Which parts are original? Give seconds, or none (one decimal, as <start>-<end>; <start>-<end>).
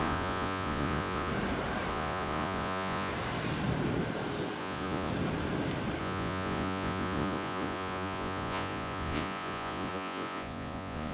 1.3-1.9; 3.1-4.6; 5.1-6.0